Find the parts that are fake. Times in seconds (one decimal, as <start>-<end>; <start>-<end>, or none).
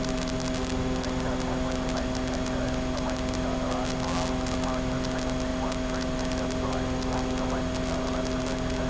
none